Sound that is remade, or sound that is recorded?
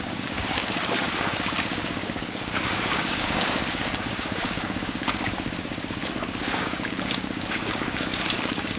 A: remade